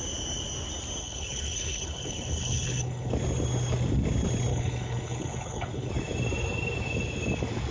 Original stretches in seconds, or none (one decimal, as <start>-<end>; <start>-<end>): 0.0-1.0; 3.1-4.5; 5.9-7.7

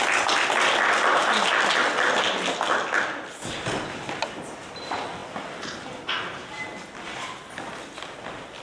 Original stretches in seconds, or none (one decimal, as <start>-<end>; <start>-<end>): 0.0-8.6

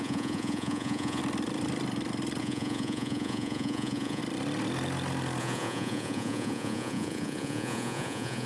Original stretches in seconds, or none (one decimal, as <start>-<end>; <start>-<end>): 1.2-2.4; 4.2-5.4

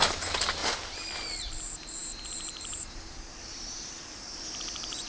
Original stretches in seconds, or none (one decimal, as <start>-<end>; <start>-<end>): 0.6-1.5

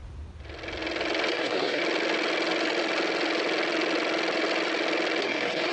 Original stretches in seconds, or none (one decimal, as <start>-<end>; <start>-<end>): 0.0-1.3; 1.8-5.2

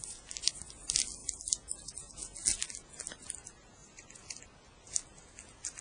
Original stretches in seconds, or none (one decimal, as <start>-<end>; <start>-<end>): 0.0-5.8

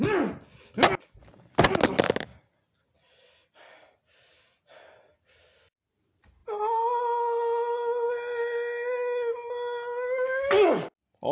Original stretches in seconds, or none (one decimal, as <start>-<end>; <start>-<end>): 0.0-11.3